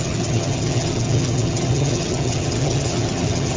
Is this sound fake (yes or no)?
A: yes